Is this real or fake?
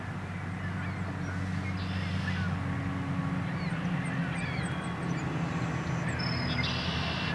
real